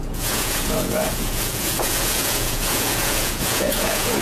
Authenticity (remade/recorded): remade